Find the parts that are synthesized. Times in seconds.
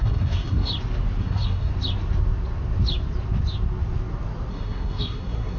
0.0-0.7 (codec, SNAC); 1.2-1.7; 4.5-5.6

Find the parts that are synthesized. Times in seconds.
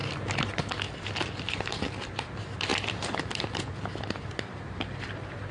none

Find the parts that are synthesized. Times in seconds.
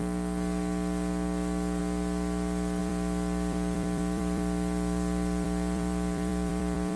2.8-7.0 (vocoder, BigVGAN v2)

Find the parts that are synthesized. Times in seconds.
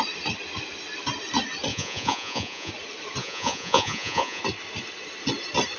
1.7-2.7 (vocoder, Vocos); 3.2-4.4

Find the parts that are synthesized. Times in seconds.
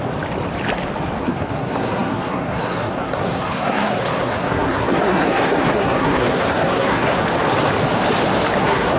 1.2-7.2 (codec, SNAC); 8.6-9.0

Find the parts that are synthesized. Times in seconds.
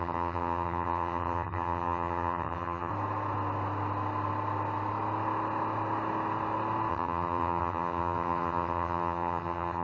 0.0-2.9 (vocoder, HiFi-GAN); 6.9-9.8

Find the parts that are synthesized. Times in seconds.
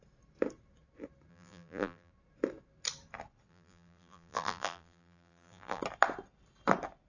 1.3-2.1 (vocoder, BigVGAN v2); 3.5-5.8